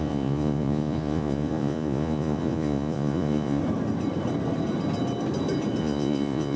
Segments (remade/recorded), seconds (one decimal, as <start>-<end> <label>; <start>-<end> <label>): 0.0-3.6 remade; 3.6-5.8 recorded; 5.8-6.6 remade